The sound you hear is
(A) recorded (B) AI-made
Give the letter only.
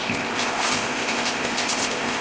B